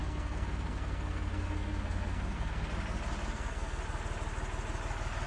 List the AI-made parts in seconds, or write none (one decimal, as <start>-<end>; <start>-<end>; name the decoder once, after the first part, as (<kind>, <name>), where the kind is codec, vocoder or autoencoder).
0.0-2.7 (codec, SNAC); 3.3-3.8